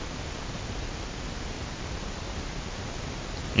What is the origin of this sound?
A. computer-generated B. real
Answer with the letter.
B